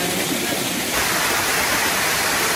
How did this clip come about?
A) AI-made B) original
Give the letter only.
B